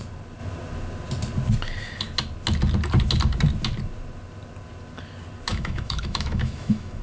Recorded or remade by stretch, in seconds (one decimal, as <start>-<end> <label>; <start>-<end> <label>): 0.0-5.5 recorded; 5.5-7.0 remade

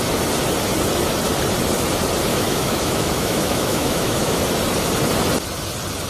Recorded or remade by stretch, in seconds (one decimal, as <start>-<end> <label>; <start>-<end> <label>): 0.0-2.3 recorded; 2.3-4.4 remade; 4.4-6.1 recorded

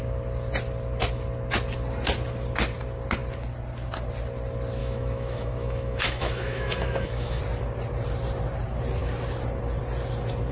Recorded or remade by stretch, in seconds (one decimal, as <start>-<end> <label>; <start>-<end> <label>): 0.0-4.8 recorded; 4.8-7.4 remade; 7.4-10.5 recorded